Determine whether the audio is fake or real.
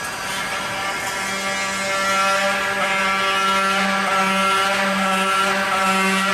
real